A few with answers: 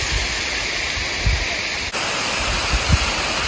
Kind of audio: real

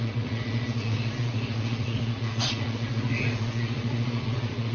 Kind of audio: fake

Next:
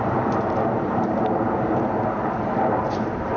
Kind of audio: fake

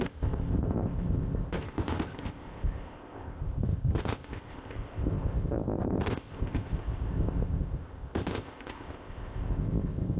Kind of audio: fake